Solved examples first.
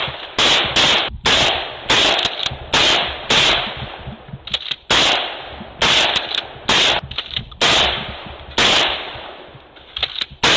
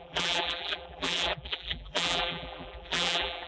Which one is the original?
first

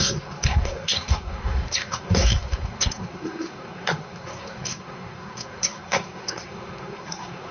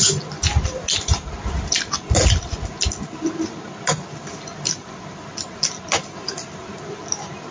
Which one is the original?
second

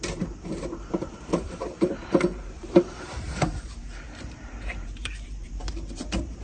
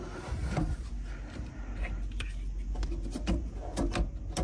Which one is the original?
second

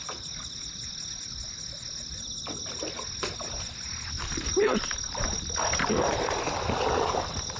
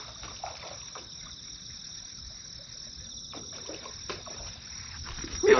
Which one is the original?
first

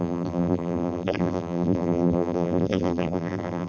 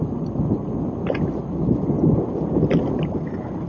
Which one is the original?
second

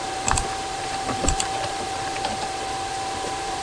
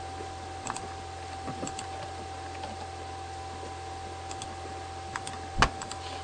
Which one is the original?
second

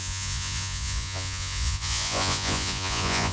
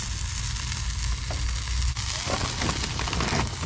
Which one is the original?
second